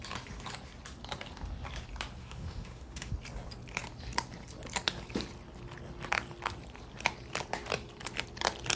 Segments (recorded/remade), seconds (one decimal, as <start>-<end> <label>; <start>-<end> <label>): 0.0-2.2 recorded; 2.2-3.1 remade; 3.1-8.8 recorded